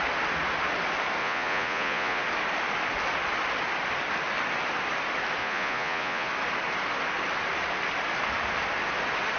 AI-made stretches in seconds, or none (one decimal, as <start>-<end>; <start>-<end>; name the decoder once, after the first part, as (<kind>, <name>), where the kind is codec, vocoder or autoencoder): 1.2-2.2 (vocoder, Vocos); 5.4-6.3